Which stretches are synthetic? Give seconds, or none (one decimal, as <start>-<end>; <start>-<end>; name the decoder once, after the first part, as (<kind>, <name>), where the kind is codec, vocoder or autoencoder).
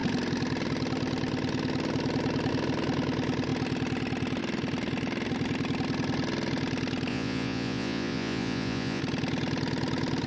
7.1-9.0 (vocoder, Vocos)